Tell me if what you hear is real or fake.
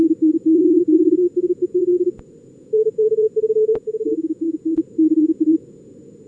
fake